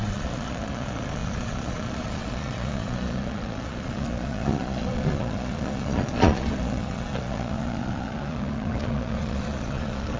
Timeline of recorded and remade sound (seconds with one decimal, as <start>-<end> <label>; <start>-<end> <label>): 0.0-10.2 remade